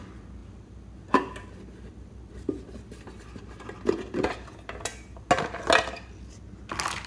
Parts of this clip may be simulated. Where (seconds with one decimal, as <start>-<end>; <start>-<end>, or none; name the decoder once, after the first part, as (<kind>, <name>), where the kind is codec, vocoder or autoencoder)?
none